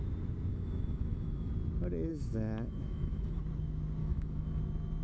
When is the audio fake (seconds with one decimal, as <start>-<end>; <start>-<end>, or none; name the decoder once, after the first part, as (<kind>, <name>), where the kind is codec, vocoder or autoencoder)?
0.5-1.5 (autoencoder, DAC-VAE); 2.1-3.4; 4.0-4.6